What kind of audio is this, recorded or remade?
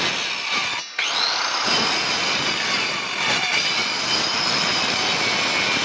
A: recorded